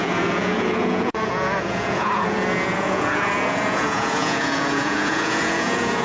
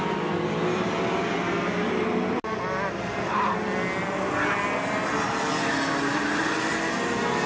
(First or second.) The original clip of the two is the second